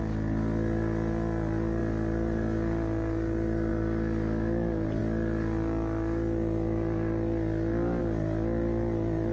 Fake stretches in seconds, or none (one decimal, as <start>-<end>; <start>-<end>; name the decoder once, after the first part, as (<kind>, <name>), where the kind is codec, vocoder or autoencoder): none